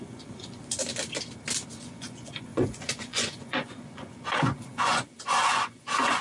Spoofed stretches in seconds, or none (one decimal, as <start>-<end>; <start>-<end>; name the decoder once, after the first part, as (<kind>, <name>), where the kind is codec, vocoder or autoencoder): 0.0-0.9 (vocoder, Vocos); 1.7-6.2